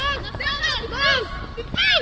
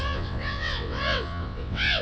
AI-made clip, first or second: second